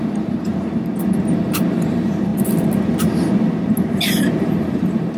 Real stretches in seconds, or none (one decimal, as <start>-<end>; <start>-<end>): 0.5-1.3; 2.3-4.4